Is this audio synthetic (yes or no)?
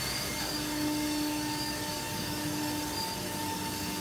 yes